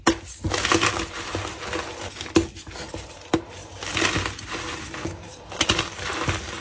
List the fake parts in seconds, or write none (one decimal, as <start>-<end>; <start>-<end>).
none